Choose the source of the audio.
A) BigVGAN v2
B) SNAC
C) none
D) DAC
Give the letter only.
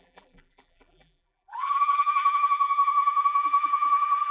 A